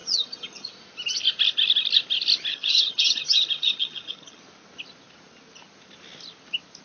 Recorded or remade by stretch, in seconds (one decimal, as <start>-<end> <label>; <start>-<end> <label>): 0.0-0.7 remade; 0.7-2.5 recorded; 2.5-4.4 remade; 4.4-6.8 recorded